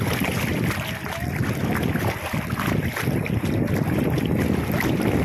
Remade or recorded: recorded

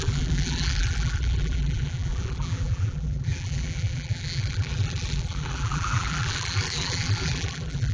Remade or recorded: remade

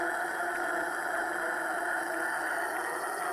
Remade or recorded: recorded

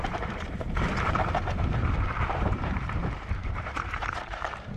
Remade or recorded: remade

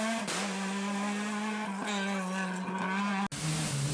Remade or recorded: recorded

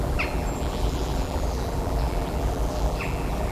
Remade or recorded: remade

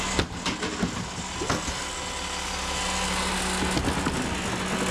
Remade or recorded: recorded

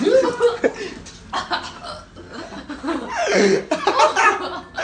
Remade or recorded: recorded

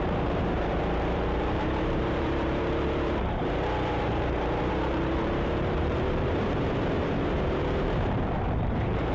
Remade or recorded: remade